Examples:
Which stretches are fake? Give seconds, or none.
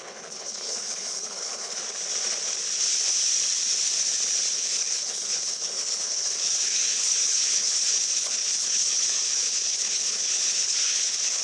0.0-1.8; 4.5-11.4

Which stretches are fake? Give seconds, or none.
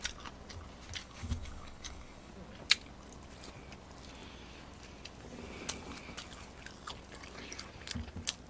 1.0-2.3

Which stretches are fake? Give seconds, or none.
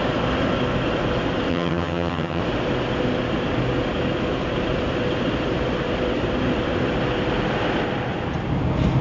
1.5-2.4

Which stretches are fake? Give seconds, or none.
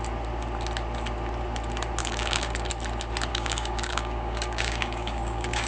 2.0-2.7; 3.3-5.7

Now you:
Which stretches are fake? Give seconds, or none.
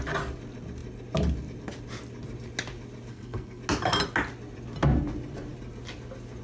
3.1-3.6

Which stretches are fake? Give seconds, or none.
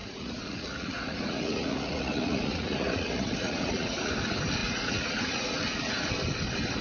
0.0-4.1; 4.6-6.1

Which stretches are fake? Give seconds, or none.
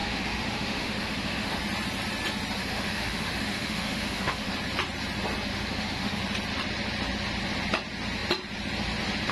0.0-1.6; 2.6-4.5; 5.5-6.2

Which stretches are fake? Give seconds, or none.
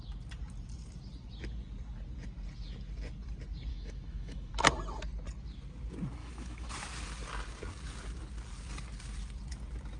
3.7-4.5; 6.2-6.7